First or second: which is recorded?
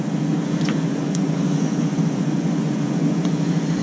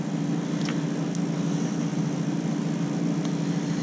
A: second